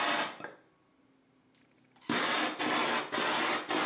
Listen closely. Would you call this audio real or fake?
real